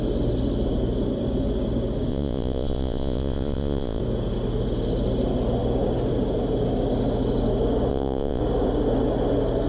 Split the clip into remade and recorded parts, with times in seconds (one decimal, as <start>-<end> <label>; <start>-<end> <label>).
0.0-2.1 recorded; 2.1-4.0 remade; 4.0-7.9 recorded; 7.9-8.4 remade; 8.4-9.7 recorded